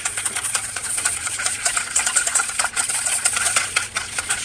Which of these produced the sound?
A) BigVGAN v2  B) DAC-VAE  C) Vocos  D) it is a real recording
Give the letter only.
C